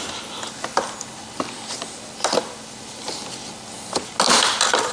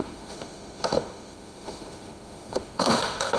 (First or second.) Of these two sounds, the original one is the first